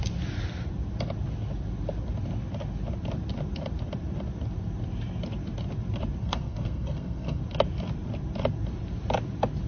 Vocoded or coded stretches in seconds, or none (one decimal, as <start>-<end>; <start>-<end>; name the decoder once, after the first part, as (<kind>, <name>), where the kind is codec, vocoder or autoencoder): 6.2-7.4 (codec, SNAC)